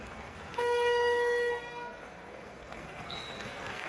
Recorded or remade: remade